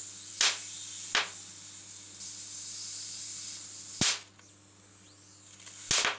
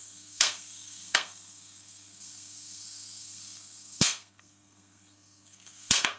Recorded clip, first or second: first